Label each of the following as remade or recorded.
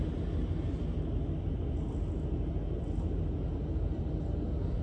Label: recorded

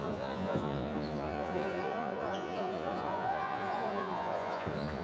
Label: remade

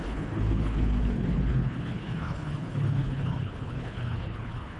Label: remade